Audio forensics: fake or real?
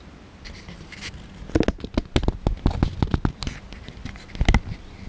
real